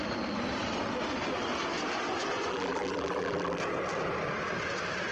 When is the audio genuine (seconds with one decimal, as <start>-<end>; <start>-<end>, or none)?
0.0-2.5; 3.6-5.1